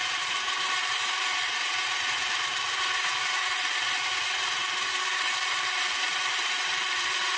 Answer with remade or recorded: remade